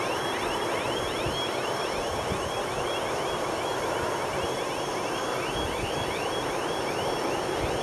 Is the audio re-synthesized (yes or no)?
no